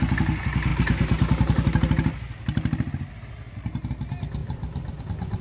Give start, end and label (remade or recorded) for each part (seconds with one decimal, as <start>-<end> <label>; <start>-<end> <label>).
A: 0.0-4.4 recorded; 4.4-5.0 remade; 5.0-5.4 recorded